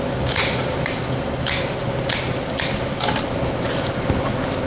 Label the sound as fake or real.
real